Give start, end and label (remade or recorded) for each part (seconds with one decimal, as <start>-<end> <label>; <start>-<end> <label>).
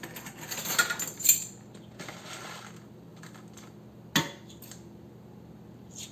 0.0-6.1 recorded